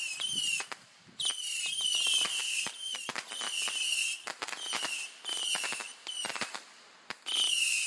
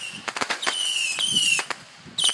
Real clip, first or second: first